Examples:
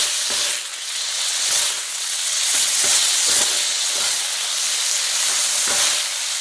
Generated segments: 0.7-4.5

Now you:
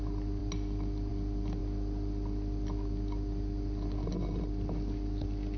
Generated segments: none